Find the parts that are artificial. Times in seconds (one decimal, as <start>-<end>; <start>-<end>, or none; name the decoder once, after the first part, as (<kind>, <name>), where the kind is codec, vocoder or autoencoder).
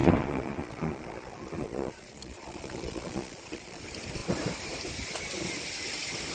0.0-3.8 (vocoder, Vocos)